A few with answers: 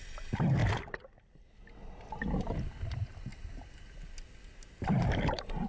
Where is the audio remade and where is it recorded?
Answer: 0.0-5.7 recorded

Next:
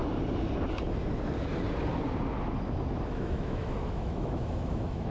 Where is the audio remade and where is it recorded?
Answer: 0.0-3.1 recorded; 3.1-5.1 remade

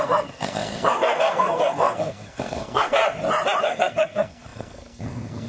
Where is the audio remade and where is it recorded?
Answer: 0.0-3.0 remade; 3.0-3.6 recorded; 3.6-5.5 remade

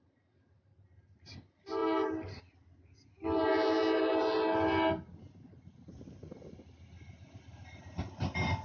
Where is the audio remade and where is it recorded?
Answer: 0.0-8.6 recorded

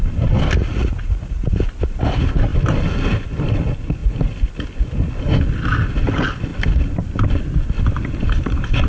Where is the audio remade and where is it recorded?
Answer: 0.0-0.6 recorded; 0.6-1.6 remade; 1.6-8.9 recorded

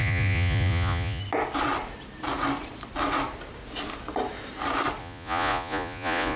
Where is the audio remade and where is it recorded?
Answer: 0.0-1.2 remade; 1.2-5.0 recorded; 5.0-6.4 remade